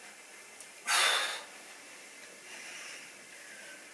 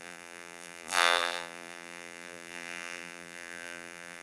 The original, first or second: first